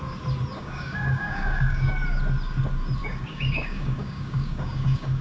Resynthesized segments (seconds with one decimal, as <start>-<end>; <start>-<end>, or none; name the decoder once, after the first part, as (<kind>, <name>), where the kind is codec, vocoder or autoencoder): 0.5-1.9 (codec, DAC); 3.0-5.2

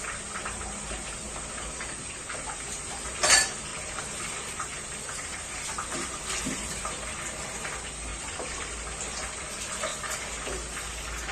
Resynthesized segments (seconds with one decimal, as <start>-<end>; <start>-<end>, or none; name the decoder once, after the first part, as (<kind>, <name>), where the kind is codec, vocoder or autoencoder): 3.7-6.4 (vocoder, BigVGAN v2); 8.1-9.5; 9.9-10.4

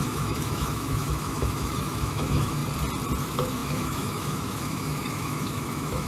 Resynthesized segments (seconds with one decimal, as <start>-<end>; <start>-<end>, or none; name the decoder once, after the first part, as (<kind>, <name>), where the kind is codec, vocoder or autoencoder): 0.0-2.6 (autoencoder, DAC-VAE); 3.2-6.1

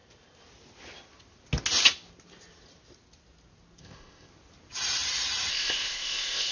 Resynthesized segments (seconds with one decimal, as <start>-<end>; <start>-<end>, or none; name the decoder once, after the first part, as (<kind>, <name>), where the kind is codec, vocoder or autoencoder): 3.8-4.3 (codec, ZipCodec); 5.5-6.5

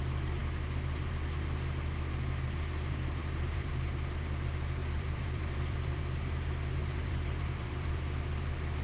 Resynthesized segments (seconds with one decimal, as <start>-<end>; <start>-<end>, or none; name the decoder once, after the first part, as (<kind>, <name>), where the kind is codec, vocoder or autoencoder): 3.2-3.7 (vocoder, BigVGAN v2); 4.8-6.0; 6.8-8.0

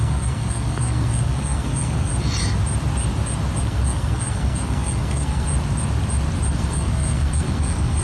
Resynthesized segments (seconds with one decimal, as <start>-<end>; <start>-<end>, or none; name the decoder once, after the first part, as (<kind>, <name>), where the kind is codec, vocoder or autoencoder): 0.0-2.1 (codec, SNAC); 3.6-5.5; 6.5-8.0